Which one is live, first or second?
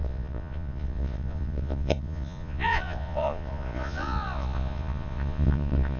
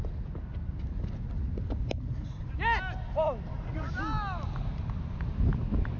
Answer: second